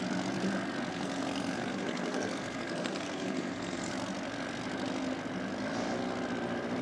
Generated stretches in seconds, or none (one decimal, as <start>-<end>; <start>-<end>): 0.9-3.9